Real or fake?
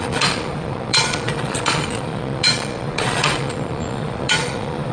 fake